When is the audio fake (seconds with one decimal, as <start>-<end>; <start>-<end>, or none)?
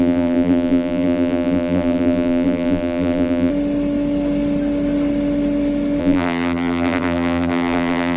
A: 0.0-3.5; 6.0-8.2